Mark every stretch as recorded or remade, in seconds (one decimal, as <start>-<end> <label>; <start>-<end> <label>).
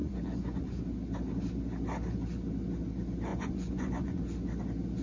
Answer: 0.0-0.8 remade; 0.8-3.3 recorded; 3.3-4.2 remade; 4.2-5.0 recorded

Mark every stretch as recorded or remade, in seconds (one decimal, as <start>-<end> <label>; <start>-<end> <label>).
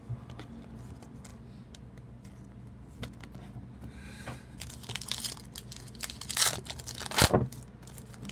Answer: 0.0-8.3 recorded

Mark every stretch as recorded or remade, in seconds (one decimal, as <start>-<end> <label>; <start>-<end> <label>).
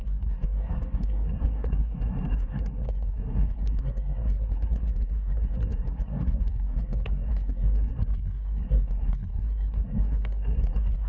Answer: 0.0-11.1 remade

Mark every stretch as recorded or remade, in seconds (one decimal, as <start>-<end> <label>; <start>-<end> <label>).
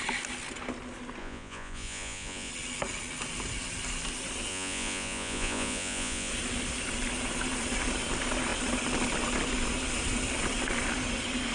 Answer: 0.0-1.2 recorded; 1.2-2.5 remade; 2.5-4.5 recorded; 4.5-6.3 remade; 6.3-11.5 recorded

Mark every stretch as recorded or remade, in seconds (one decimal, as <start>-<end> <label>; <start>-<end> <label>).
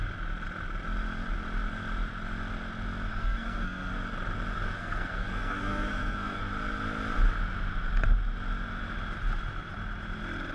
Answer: 0.0-3.1 recorded; 3.1-3.9 remade; 3.9-4.7 recorded; 4.7-6.4 remade; 6.4-10.5 recorded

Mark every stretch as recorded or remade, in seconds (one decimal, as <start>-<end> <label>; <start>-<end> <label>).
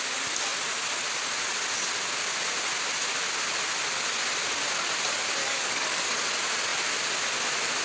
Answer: 0.0-5.4 recorded; 5.4-6.2 remade; 6.2-7.8 recorded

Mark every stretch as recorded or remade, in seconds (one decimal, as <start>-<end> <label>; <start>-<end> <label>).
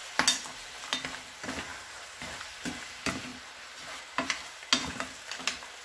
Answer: 0.0-1.7 recorded; 1.7-2.4 remade; 2.4-3.3 recorded; 3.3-4.0 remade; 4.0-5.8 recorded